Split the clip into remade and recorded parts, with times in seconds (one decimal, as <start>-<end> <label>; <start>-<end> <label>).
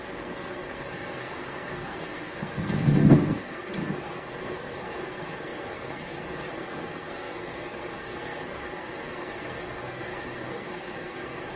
0.0-11.6 remade